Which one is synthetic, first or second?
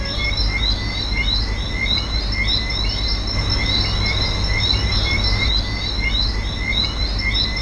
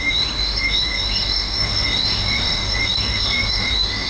second